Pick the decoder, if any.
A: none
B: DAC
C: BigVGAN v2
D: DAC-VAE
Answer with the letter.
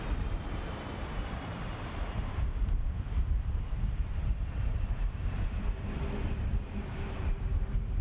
C